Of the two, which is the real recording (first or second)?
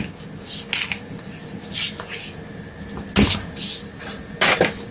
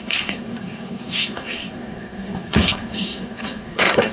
first